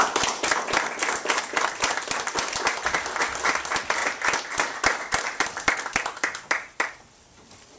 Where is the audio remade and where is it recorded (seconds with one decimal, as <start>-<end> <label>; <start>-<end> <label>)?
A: 0.0-4.0 recorded; 4.0-7.8 remade